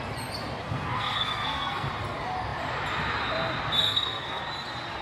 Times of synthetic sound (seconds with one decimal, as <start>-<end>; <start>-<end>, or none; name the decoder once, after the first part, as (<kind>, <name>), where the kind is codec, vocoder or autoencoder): 0.6-1.9 (codec, SNAC); 3.8-4.4